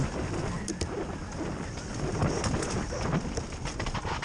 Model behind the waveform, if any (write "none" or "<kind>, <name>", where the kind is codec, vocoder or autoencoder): none